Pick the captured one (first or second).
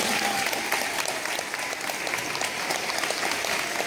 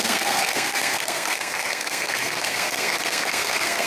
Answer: first